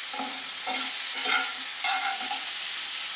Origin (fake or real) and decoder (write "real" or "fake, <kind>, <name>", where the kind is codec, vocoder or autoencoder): real